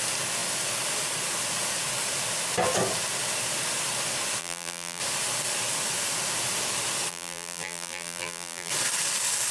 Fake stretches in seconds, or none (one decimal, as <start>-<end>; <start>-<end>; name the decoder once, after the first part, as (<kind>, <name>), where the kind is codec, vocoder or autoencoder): 4.4-5.0 (vocoder, BigVGAN v2); 7.1-8.7

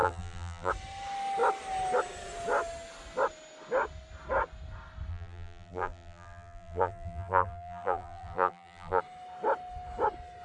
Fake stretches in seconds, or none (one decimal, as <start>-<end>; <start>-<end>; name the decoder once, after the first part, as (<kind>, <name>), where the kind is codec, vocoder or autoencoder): 0.0-0.7 (vocoder, BigVGAN v2); 5.1-9.0

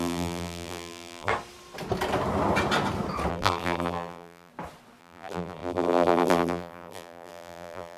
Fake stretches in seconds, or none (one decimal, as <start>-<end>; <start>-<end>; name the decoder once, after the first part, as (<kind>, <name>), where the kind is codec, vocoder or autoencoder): 0.0-1.3 (vocoder, BigVGAN v2); 3.3-4.5; 5.0-8.0